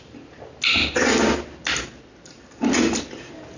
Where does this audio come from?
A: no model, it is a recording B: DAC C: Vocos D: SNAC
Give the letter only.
A